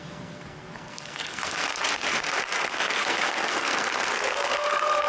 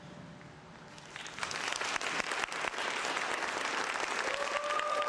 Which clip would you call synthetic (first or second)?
first